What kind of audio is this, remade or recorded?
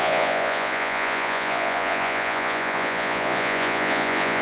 remade